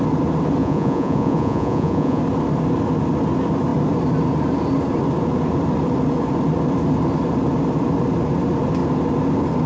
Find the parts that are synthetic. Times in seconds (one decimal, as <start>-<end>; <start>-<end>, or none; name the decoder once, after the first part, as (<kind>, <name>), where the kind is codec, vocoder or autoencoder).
0.6-2.2 (vocoder, Vocos)